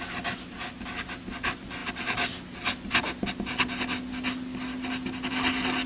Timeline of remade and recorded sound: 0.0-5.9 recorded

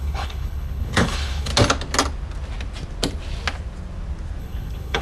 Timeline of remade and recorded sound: 0.0-1.5 remade; 1.5-4.4 recorded; 4.4-5.0 remade

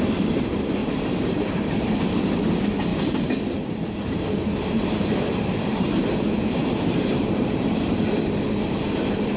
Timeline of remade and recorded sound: 0.0-0.8 recorded; 0.8-2.0 remade; 2.0-2.9 recorded; 2.9-6.0 remade; 6.0-6.6 recorded; 6.6-7.9 remade; 7.9-9.4 recorded

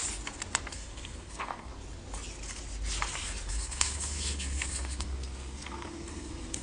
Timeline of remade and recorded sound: 0.0-0.7 recorded; 0.7-1.7 remade; 1.7-3.5 recorded; 3.5-6.6 remade